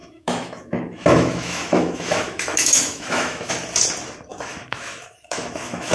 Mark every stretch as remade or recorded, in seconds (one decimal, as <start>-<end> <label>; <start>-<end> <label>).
0.0-3.5 remade; 3.5-4.3 recorded; 4.3-5.9 remade